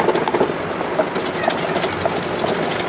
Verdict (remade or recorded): recorded